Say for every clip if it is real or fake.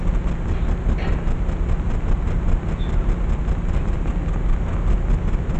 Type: real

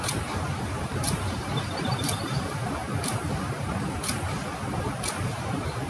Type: fake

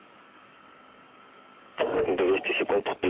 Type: fake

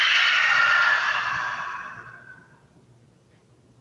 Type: real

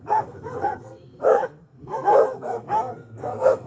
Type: fake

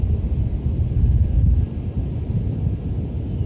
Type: real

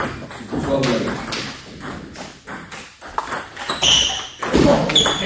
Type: real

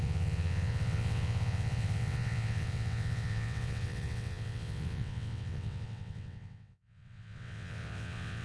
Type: fake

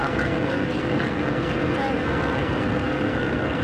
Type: fake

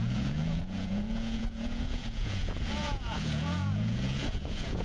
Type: fake